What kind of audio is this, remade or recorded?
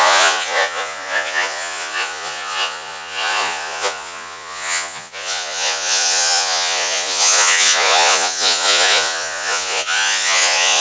remade